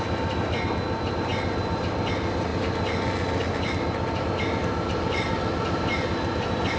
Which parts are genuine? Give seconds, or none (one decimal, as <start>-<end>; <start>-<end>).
0.0-6.8